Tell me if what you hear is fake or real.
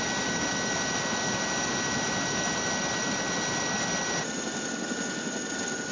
real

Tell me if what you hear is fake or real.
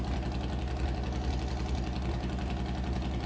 real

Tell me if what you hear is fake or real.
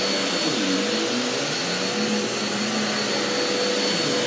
real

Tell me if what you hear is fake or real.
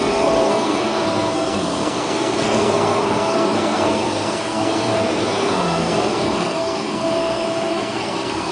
fake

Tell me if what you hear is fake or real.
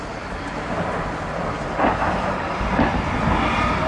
real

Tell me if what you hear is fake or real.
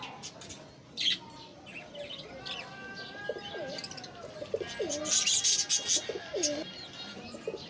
real